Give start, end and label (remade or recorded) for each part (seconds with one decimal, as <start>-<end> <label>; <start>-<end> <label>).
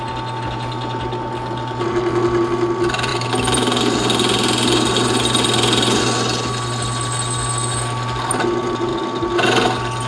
0.0-10.1 recorded